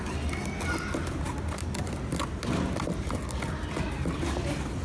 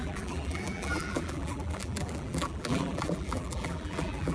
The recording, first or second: first